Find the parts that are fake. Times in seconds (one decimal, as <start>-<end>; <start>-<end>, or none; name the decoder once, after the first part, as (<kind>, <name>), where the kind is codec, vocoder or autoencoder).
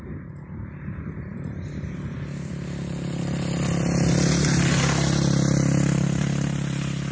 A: none